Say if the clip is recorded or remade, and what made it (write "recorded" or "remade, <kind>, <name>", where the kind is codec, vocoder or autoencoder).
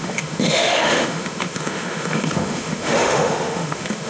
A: remade, autoencoder, DAC-VAE